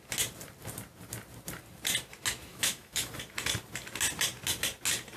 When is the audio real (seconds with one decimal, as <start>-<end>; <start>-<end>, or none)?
0.0-2.5; 3.1-5.2